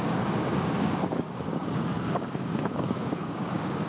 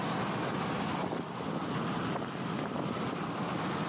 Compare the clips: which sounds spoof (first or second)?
first